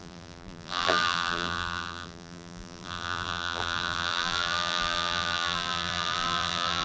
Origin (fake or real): fake